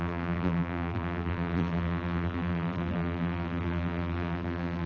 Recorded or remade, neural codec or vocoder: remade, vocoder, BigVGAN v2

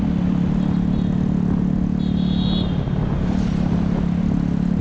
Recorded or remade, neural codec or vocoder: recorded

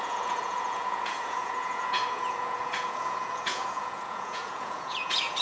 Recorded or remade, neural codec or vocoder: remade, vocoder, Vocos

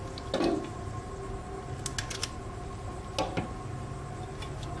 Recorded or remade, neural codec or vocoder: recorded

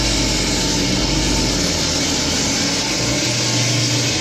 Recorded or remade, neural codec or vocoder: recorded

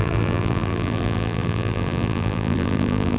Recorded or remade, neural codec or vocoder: remade, vocoder, BigVGAN v2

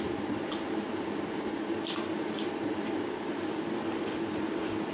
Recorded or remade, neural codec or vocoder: recorded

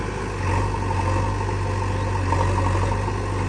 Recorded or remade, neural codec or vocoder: recorded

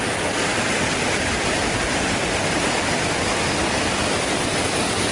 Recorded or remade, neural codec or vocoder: recorded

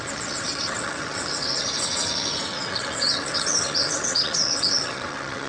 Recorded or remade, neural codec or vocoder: remade, vocoder, WaveNeXt